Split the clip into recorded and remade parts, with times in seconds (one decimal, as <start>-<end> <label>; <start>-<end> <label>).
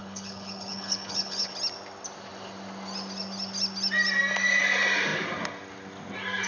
0.0-1.5 remade; 1.5-6.5 recorded